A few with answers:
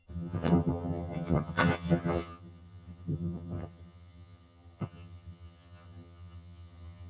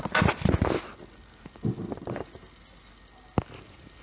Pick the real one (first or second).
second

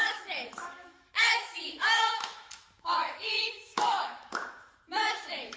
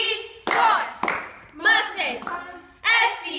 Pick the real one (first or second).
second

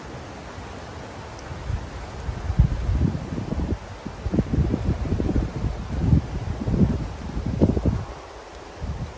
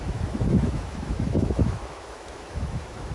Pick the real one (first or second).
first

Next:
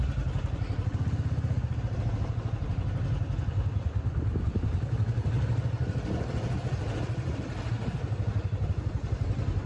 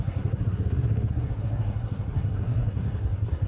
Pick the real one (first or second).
first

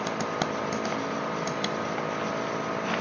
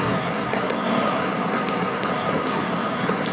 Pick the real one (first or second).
first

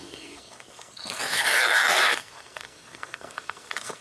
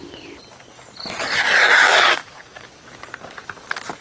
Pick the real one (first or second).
second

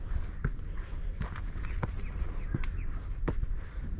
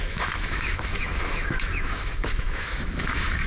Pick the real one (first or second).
first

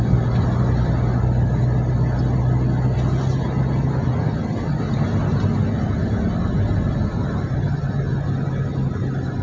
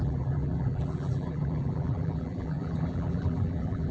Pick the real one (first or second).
first